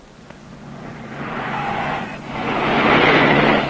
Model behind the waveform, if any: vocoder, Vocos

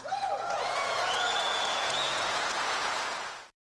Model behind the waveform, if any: vocoder, Vocos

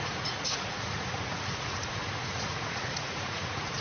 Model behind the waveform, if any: vocoder, Vocos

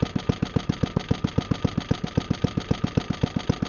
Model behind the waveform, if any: none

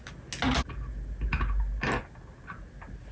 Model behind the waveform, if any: none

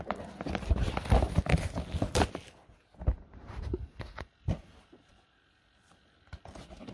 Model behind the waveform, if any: none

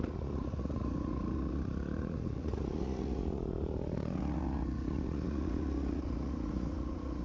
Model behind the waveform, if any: vocoder, Vocos